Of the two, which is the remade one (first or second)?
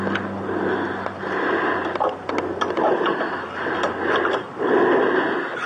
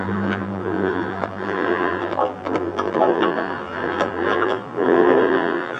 second